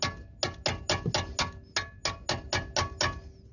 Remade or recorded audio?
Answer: recorded